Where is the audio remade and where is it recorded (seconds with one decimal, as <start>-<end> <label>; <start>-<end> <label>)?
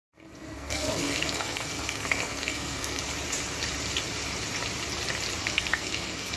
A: 0.0-3.0 remade; 3.0-5.4 recorded; 5.4-6.4 remade